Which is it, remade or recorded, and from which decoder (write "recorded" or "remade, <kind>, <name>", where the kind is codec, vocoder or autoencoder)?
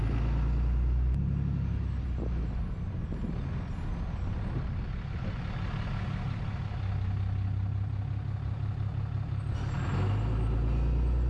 recorded